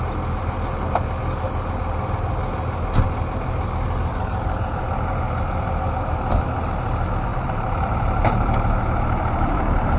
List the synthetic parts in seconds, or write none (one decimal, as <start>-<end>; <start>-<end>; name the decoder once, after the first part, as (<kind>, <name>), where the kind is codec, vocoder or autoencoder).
7.3-10.0 (vocoder, BigVGAN v2)